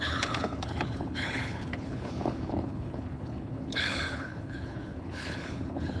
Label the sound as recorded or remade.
remade